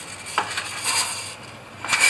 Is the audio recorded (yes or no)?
yes